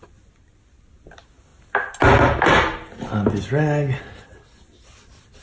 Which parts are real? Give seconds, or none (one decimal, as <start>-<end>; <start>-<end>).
0.0-5.4